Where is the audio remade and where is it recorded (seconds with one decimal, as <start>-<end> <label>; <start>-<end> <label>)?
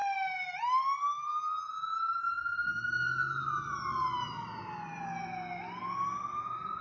0.0-6.8 recorded